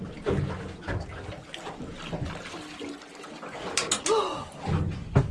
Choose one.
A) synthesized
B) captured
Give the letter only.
B